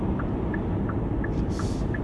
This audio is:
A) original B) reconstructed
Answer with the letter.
A